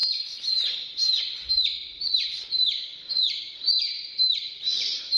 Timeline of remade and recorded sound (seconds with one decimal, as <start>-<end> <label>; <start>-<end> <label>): 0.0-5.2 remade